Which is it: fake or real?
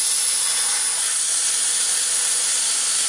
real